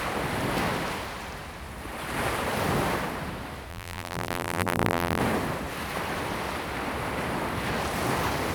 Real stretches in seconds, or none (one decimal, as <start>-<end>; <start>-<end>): 0.0-3.7; 5.2-8.5